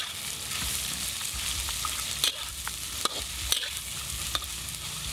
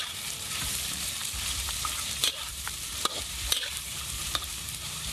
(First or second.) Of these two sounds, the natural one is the first